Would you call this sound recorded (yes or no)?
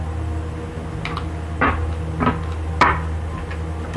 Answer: yes